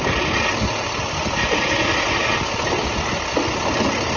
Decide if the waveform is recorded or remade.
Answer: recorded